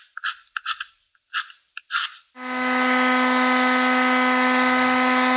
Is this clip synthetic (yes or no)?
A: no